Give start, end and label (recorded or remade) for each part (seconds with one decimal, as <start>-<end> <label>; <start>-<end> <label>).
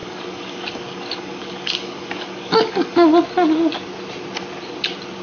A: 0.0-3.1 remade; 3.1-5.2 recorded